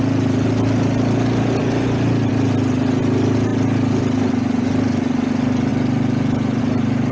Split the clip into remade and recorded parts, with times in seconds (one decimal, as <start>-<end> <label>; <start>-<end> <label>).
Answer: 0.0-7.1 recorded